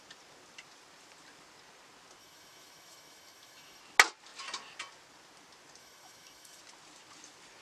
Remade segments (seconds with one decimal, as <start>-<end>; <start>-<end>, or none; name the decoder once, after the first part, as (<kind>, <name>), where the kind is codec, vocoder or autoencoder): 2.2-3.8 (autoencoder, DAC-VAE); 5.8-6.6